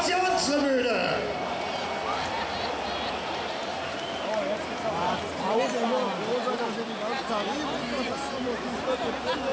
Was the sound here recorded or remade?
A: recorded